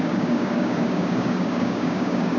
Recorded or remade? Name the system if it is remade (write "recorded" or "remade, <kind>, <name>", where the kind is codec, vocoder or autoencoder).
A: remade, codec, DAC